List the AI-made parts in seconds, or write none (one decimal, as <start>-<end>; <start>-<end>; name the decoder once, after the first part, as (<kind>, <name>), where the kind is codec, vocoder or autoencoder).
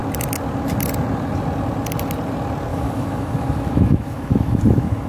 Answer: 2.7-5.1 (autoencoder, DAC-VAE)